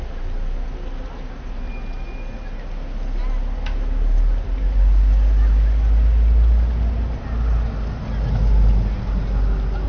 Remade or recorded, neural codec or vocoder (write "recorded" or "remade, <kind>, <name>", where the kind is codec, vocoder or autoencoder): recorded